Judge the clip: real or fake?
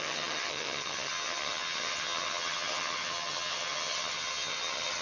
fake